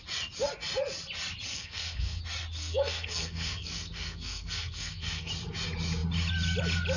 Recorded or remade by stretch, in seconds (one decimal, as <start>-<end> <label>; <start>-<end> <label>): 0.0-1.5 recorded; 1.5-2.2 remade; 2.2-2.6 recorded; 2.6-5.3 remade; 5.3-7.0 recorded